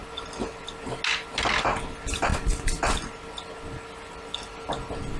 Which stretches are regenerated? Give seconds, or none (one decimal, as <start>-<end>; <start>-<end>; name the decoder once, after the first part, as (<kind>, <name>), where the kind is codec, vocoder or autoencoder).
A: none